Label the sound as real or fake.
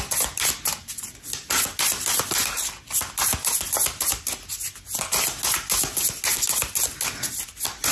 real